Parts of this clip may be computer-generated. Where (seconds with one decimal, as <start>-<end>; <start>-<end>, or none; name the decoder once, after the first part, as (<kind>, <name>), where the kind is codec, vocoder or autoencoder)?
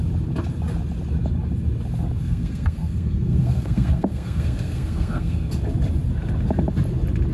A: 2.2-5.5 (codec, SNAC)